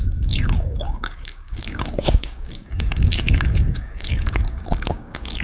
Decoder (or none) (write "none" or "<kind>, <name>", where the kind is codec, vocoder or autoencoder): codec, DAC